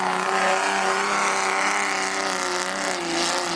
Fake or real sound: real